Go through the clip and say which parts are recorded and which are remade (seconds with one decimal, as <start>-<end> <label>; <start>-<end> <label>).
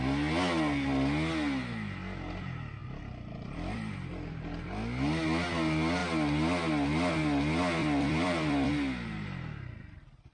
0.0-2.8 recorded; 2.8-3.9 remade; 3.9-7.8 recorded; 7.8-8.7 remade; 8.7-10.3 recorded